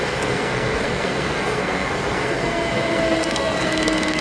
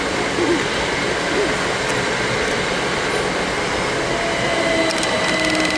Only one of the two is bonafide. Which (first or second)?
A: second